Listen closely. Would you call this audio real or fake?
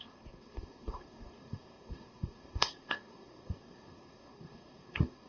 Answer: fake